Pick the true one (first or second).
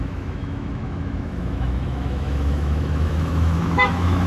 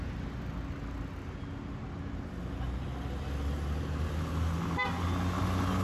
second